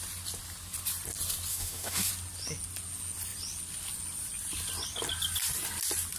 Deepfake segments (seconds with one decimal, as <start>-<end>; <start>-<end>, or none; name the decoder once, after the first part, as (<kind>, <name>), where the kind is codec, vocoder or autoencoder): 1.5-2.1 (autoencoder, DAC-VAE)